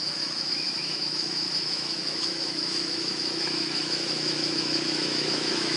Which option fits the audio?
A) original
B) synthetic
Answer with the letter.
B